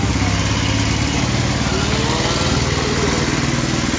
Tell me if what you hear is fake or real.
real